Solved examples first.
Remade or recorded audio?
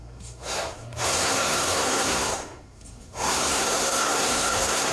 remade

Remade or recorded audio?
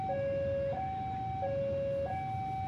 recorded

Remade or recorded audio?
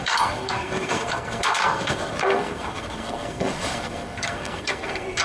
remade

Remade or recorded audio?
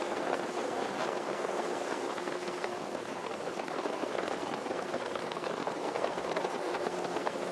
remade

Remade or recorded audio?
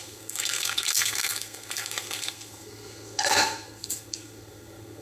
remade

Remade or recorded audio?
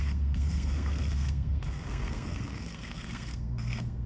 remade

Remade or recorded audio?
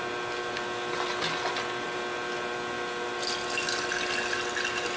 recorded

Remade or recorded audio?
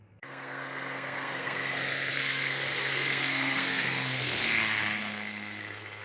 remade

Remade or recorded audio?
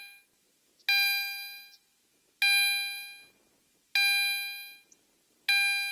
recorded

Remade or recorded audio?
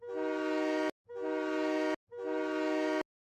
recorded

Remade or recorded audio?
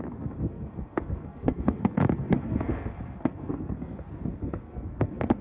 remade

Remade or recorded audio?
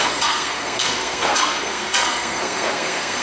remade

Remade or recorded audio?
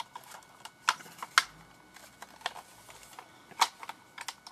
recorded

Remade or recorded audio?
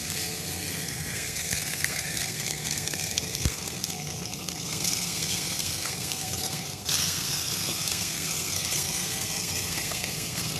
remade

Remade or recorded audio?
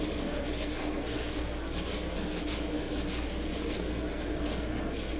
remade